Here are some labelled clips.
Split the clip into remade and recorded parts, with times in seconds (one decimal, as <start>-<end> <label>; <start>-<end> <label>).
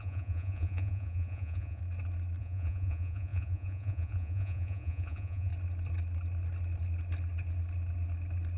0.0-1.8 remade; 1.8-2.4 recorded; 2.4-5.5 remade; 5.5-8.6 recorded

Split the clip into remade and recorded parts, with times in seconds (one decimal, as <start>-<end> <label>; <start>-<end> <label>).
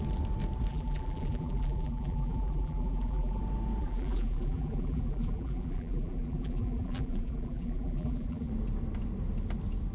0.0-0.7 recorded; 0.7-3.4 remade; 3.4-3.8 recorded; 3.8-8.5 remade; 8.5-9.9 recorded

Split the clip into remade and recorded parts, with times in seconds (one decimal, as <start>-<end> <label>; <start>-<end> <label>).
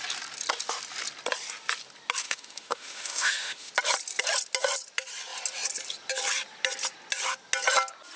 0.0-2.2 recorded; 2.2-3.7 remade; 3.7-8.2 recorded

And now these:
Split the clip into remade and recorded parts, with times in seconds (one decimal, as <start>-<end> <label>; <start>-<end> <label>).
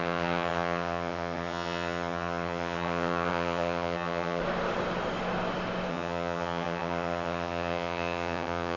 0.0-4.4 remade; 4.4-5.9 recorded; 5.9-8.8 remade